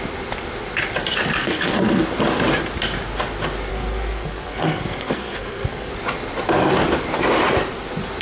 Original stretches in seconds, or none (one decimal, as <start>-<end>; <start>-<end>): 0.0-1.4; 2.0-3.7; 5.9-8.2